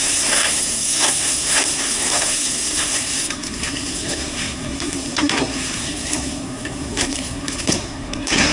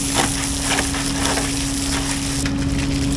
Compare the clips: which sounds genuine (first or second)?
second